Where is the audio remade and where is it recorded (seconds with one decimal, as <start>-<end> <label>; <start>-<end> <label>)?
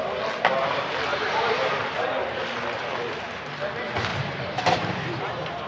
0.0-1.1 recorded; 1.1-1.7 remade; 1.7-4.1 recorded; 4.1-5.7 remade